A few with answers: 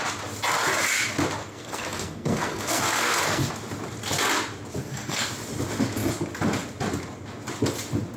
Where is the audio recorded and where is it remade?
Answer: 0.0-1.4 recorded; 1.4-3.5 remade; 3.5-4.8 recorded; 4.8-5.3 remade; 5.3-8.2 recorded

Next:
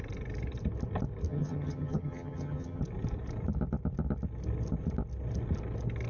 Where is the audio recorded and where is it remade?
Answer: 0.0-1.3 recorded; 1.3-2.8 remade; 2.8-6.1 recorded

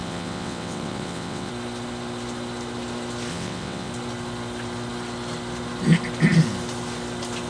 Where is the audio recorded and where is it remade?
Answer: 0.0-1.5 remade; 1.5-3.3 recorded; 3.3-3.9 remade; 3.9-7.5 recorded